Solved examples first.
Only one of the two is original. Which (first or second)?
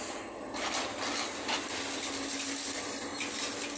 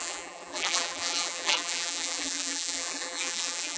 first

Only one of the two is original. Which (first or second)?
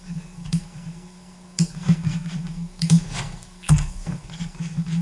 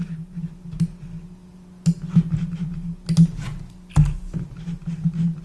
second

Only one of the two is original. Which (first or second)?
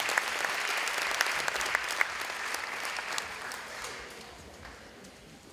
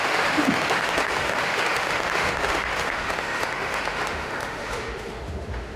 first